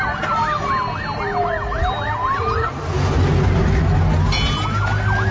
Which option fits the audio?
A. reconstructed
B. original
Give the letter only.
B